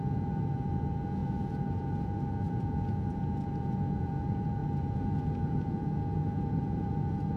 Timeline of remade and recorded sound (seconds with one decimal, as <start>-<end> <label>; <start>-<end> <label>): 0.0-7.4 remade

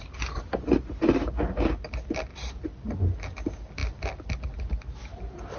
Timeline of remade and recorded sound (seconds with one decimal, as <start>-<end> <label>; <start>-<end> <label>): 0.0-5.6 recorded

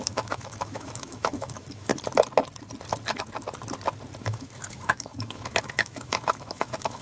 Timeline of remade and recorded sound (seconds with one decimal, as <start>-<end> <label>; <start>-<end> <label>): 0.0-1.9 remade; 1.9-4.2 recorded; 4.2-7.0 remade

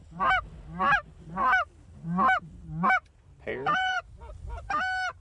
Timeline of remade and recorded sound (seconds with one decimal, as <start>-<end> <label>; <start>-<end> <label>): 0.0-3.5 recorded; 3.5-4.0 remade; 4.0-5.2 recorded

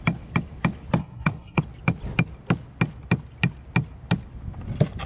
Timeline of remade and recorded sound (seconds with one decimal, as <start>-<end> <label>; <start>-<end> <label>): 0.0-1.0 recorded; 1.0-1.6 remade; 1.6-5.1 recorded

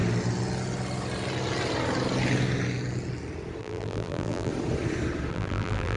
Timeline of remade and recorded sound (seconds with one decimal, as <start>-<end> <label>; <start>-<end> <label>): 0.0-3.6 recorded; 3.6-4.5 remade; 4.5-5.3 recorded; 5.3-6.0 remade

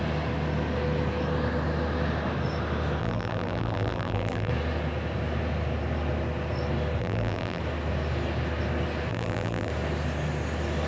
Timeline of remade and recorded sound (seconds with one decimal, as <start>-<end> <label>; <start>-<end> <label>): 0.0-3.0 recorded; 3.0-4.5 remade; 4.5-7.0 recorded; 7.0-7.6 remade; 7.6-9.1 recorded; 9.1-9.7 remade; 9.7-10.9 recorded

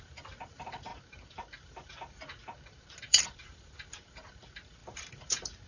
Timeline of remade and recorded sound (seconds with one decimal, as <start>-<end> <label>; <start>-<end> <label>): 0.0-0.9 remade; 0.9-2.8 recorded; 2.8-4.8 remade; 4.8-5.7 recorded